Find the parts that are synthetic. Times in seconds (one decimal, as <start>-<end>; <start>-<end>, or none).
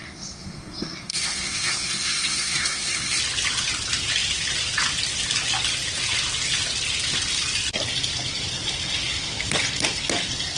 0.0-3.2